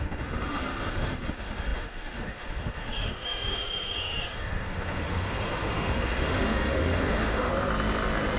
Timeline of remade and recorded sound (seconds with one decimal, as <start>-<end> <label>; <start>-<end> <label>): 0.0-7.5 remade; 7.5-8.4 recorded